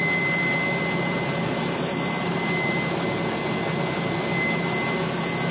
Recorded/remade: recorded